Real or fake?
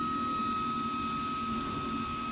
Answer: real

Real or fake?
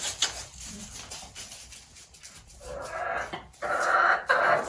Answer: real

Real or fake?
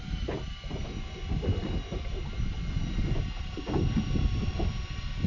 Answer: real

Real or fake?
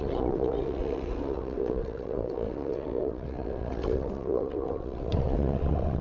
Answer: fake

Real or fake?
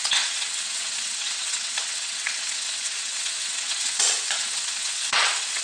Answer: fake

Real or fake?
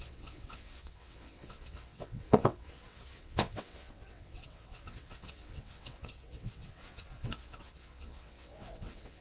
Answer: fake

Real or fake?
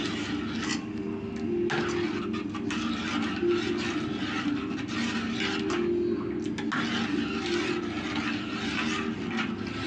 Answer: real